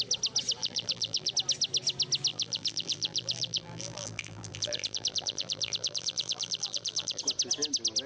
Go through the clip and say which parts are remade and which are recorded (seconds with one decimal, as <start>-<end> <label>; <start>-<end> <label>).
0.0-0.6 recorded; 0.6-1.3 remade; 1.3-2.3 recorded; 2.3-7.2 remade; 7.2-8.1 recorded